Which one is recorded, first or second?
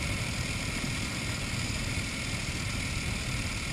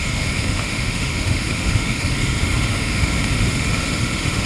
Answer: first